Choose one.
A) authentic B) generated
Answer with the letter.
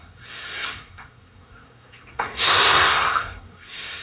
B